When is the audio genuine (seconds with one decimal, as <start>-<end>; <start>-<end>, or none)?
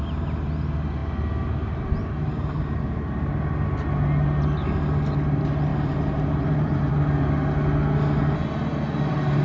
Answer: 0.0-5.7; 6.9-8.7